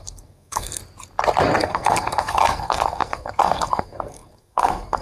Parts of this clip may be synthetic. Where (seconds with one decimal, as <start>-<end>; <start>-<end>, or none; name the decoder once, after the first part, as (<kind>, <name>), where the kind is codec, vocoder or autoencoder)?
0.0-0.8 (codec, SNAC); 1.6-5.0

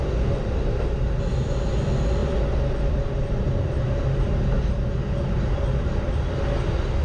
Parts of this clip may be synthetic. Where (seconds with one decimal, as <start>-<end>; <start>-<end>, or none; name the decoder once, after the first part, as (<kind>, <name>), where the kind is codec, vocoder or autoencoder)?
none